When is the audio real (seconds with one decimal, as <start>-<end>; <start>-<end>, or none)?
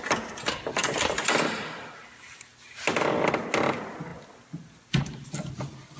0.0-0.8; 1.9-6.0